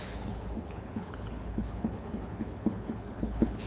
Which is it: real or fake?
fake